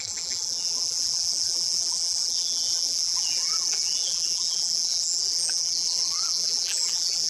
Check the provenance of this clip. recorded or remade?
remade